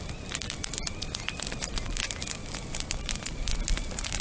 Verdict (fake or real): fake